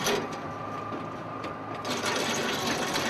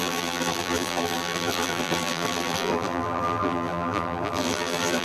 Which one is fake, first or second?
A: second